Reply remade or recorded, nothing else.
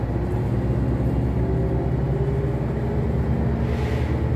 recorded